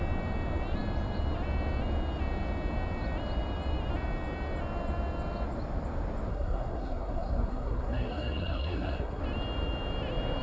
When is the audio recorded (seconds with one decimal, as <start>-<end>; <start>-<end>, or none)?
0.0-6.3; 9.2-10.4